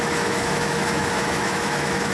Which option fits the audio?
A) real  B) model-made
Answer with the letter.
B